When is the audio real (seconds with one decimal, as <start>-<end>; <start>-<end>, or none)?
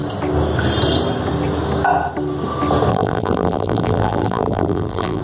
0.0-2.9